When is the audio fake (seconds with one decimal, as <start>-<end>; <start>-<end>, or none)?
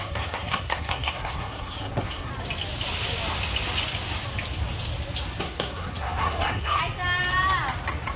0.0-2.3; 5.4-6.8